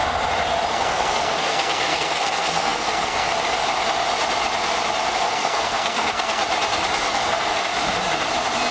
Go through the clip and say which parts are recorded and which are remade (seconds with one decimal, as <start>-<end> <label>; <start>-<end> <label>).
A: 0.0-0.7 recorded; 0.7-3.3 remade; 3.3-5.1 recorded; 5.1-6.4 remade; 6.4-7.1 recorded; 7.1-7.7 remade; 7.7-8.7 recorded